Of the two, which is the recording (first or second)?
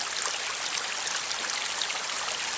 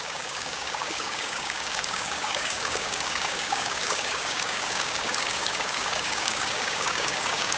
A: first